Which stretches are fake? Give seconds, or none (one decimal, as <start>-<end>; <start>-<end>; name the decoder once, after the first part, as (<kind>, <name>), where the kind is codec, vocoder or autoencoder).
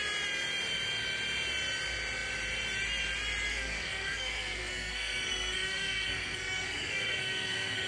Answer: 3.5-7.9 (codec, SNAC)